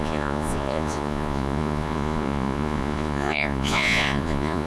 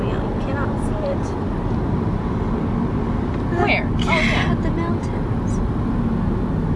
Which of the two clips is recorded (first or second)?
second